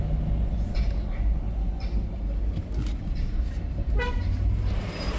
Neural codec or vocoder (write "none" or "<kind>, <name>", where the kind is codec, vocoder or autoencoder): none